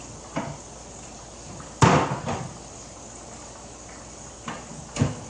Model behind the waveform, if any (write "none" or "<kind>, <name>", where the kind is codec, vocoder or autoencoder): none